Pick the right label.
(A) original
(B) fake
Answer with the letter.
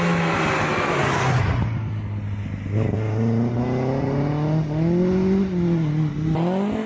A